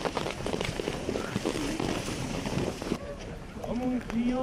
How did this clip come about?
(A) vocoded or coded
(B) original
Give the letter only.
A